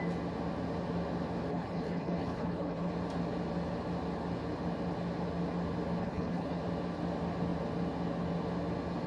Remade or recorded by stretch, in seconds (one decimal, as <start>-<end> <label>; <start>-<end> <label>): 0.0-1.5 recorded; 1.5-2.9 remade; 2.9-6.0 recorded; 6.0-6.6 remade; 6.6-9.1 recorded